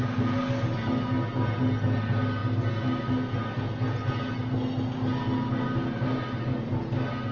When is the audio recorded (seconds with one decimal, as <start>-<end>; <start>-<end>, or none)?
0.0-7.3